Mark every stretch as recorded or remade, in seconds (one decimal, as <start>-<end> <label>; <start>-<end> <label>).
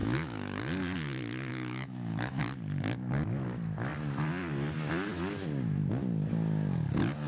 0.0-0.6 remade; 0.6-1.5 recorded; 1.5-2.4 remade; 2.4-7.3 recorded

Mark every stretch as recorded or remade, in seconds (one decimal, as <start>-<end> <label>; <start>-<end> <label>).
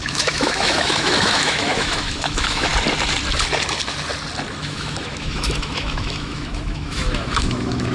0.0-2.7 remade; 2.7-4.6 recorded; 4.6-7.9 remade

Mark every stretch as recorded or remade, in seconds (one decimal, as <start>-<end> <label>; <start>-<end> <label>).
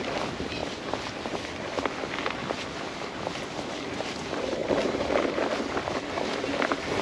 0.0-7.0 recorded